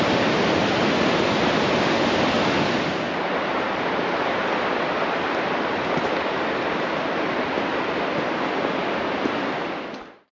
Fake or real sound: real